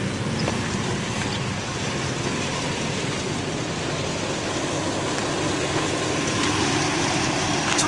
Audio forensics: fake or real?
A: real